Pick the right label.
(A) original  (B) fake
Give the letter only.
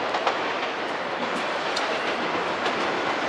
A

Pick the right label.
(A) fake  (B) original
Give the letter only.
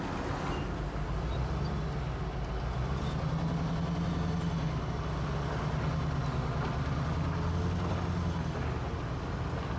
B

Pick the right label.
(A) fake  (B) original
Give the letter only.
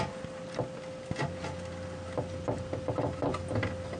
B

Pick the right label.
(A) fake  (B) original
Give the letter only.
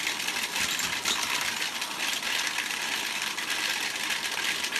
B